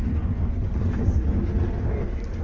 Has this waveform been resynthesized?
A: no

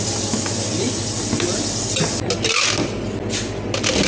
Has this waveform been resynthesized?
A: no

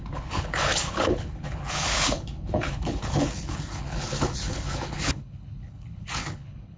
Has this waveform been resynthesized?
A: yes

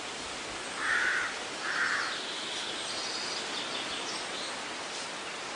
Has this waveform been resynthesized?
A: no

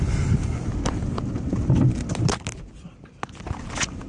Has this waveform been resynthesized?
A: no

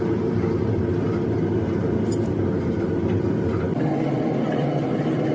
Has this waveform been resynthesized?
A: no